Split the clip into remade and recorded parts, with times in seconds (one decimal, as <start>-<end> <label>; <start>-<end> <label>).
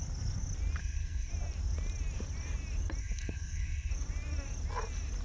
0.0-0.8 recorded; 0.8-1.3 remade; 1.3-3.0 recorded; 3.0-3.9 remade; 3.9-5.2 recorded